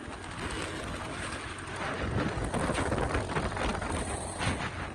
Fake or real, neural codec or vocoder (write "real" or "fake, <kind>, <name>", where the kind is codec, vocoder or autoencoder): real